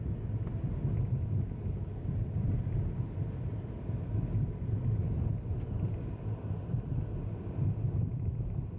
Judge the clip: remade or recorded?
recorded